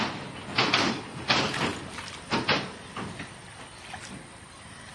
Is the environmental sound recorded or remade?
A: recorded